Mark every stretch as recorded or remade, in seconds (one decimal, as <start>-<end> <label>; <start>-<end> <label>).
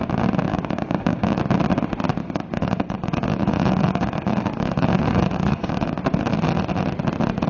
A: 0.0-0.5 recorded; 0.5-1.4 remade; 1.4-2.2 recorded; 2.2-6.0 remade; 6.0-7.5 recorded